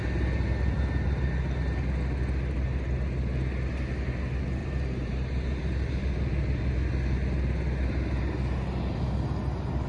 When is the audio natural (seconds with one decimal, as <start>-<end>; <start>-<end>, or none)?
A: 0.0-4.6; 5.9-9.9